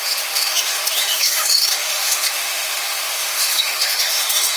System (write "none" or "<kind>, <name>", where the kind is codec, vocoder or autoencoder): autoencoder, DAC-VAE